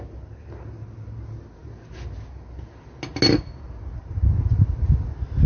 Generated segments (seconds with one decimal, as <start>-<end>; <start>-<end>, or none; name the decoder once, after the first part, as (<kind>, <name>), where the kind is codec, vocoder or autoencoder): none